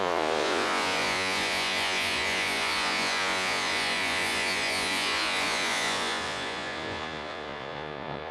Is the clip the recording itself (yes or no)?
no